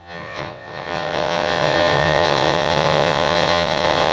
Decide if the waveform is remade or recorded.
remade